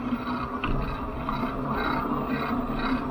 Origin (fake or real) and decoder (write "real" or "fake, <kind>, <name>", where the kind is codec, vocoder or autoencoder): real